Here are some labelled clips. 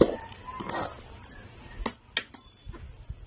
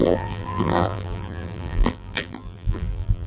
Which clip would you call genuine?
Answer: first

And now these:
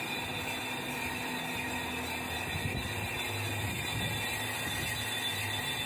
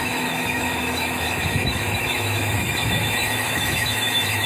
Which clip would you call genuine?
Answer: first